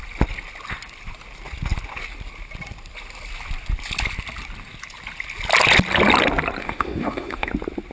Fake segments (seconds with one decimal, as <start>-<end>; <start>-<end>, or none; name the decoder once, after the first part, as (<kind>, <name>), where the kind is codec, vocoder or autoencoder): 6.6-7.5 (autoencoder, DAC-VAE)